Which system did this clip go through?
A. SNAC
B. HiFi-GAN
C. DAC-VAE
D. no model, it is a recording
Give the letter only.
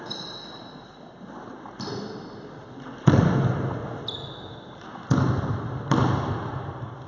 D